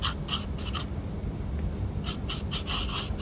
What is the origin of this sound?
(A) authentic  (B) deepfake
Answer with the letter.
A